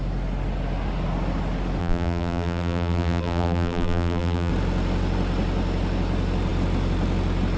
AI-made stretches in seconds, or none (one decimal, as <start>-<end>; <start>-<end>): 1.8-4.5